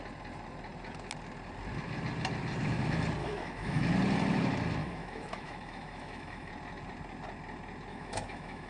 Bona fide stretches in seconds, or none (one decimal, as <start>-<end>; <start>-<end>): 0.0-3.2; 3.8-4.8; 6.5-7.9